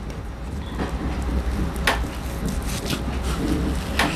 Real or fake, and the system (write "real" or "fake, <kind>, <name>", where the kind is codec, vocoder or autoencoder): real